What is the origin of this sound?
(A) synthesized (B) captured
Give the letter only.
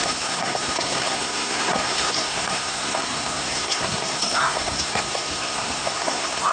A